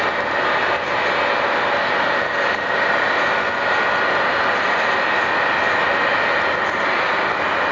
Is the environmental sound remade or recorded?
recorded